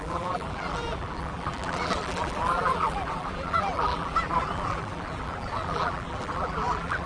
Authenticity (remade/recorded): remade